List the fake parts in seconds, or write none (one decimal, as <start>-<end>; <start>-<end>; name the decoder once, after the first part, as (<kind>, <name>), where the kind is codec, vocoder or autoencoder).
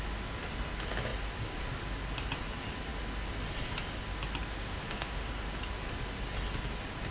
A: 4.6-5.3 (autoencoder, DAC-VAE)